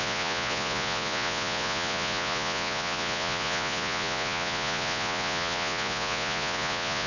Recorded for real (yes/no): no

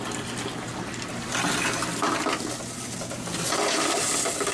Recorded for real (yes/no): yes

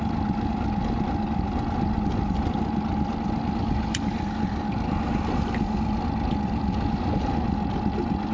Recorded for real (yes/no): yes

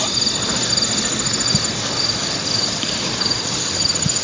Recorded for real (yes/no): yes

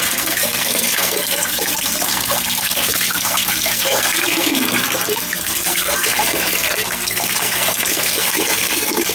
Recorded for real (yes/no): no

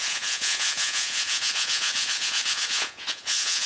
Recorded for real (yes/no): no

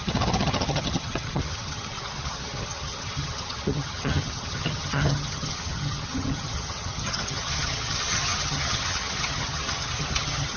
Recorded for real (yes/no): no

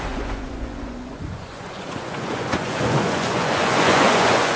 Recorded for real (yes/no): no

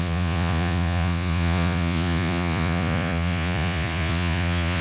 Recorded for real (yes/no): no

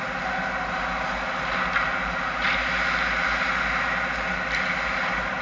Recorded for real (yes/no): yes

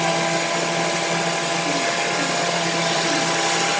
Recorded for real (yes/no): yes